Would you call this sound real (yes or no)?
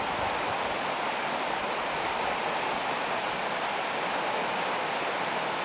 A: yes